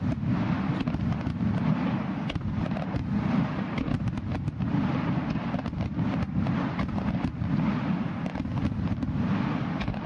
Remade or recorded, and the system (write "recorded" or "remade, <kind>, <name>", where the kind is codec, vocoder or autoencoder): recorded